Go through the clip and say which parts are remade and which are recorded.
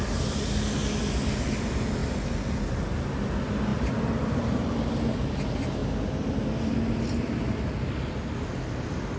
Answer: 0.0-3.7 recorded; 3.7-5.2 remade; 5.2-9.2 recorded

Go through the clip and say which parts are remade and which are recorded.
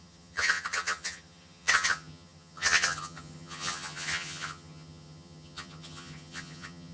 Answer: 0.0-6.9 remade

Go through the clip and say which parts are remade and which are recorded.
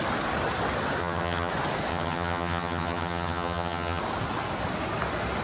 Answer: 0.0-1.0 recorded; 1.0-1.5 remade; 1.5-1.9 recorded; 1.9-4.0 remade; 4.0-5.4 recorded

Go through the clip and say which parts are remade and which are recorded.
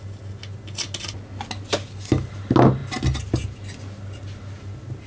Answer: 0.0-5.1 recorded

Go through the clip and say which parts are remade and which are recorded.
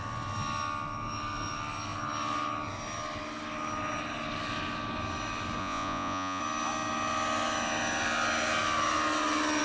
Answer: 0.0-5.6 recorded; 5.6-6.4 remade; 6.4-9.6 recorded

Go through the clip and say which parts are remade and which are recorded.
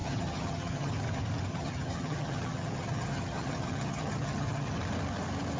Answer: 0.0-0.9 remade; 0.9-1.5 recorded; 1.5-4.7 remade; 4.7-5.6 recorded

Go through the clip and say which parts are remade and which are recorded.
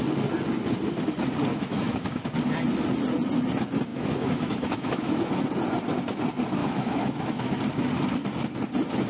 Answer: 0.0-1.5 recorded; 1.5-2.3 remade; 2.3-3.9 recorded; 3.9-5.2 remade; 5.2-6.6 recorded; 6.6-7.6 remade; 7.6-9.1 recorded